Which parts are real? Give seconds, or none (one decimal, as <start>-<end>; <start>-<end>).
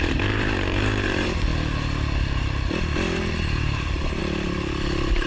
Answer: 1.5-3.3; 4.2-5.3